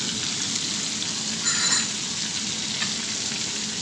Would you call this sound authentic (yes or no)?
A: yes